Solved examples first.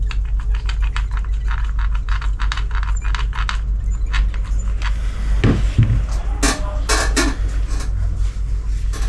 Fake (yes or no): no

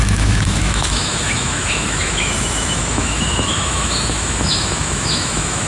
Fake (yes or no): yes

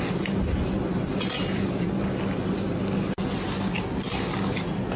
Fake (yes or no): no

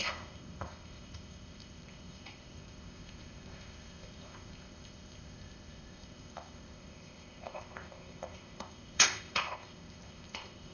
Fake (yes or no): yes